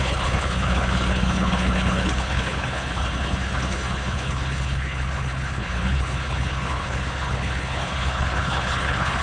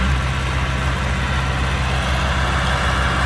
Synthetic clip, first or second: first